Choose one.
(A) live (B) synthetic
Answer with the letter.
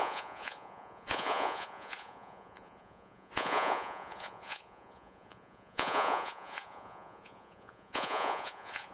B